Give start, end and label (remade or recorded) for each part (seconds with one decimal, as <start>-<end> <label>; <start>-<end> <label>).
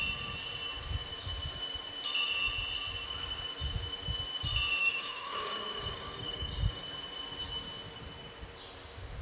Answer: 0.0-4.8 recorded; 4.8-6.8 remade; 6.8-9.2 recorded